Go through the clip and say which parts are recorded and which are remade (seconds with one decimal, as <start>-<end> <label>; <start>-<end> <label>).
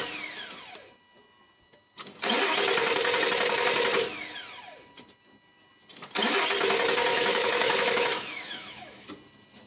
0.0-7.1 recorded; 7.1-9.1 remade; 9.1-9.7 recorded